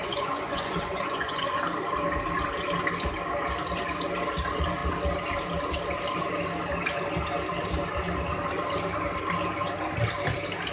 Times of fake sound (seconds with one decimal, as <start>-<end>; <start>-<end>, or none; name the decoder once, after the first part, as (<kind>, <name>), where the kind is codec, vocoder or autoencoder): 0.0-1.6 (vocoder, Vocos)